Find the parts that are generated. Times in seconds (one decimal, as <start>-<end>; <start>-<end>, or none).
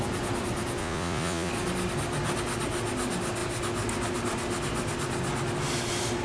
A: 0.8-1.5